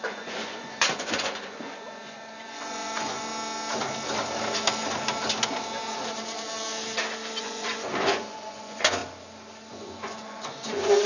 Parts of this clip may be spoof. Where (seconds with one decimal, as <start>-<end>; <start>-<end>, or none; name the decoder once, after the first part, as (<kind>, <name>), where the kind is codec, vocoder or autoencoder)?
0.0-3.3 (vocoder, Vocos); 7.4-9.0; 9.7-11.1